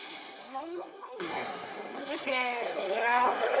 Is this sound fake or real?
fake